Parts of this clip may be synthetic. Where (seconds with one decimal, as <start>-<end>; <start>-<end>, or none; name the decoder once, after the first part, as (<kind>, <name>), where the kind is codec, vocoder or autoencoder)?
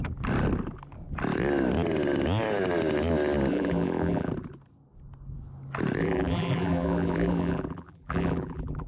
3.5-4.3 (vocoder, BigVGAN v2); 6.0-8.9